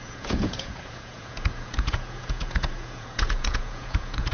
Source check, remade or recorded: remade